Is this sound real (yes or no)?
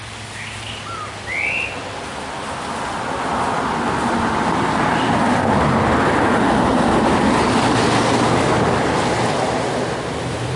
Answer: yes